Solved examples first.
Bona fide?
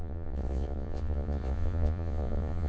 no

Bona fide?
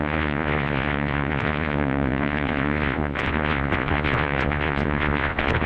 no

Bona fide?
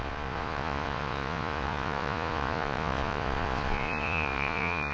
no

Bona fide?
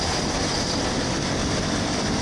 yes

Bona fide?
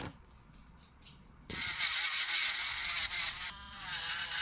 no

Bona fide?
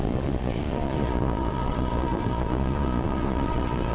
no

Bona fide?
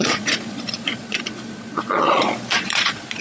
no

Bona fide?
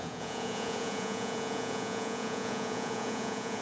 no